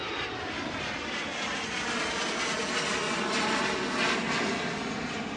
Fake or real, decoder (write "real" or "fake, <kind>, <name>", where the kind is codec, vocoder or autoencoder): real